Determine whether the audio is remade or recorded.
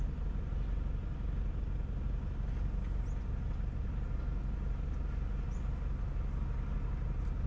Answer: recorded